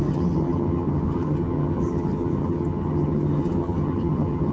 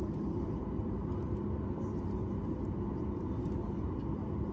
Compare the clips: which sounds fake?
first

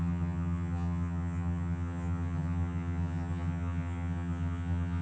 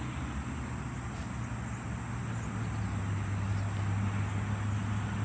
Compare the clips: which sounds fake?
first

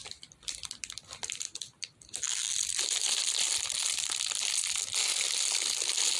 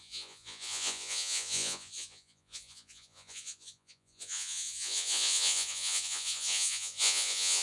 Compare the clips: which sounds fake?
second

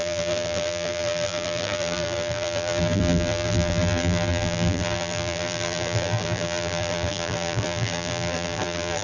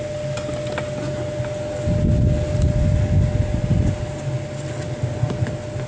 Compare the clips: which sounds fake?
first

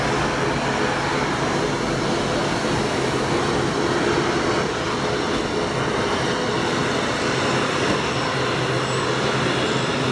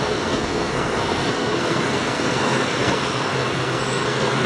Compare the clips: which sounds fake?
second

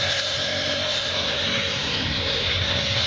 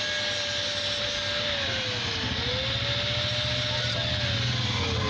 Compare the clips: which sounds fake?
first